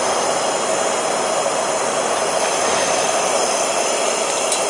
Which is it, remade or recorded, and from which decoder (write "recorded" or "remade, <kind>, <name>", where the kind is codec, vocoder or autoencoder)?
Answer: recorded